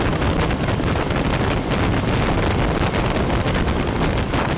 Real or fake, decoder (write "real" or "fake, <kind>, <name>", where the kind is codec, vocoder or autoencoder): real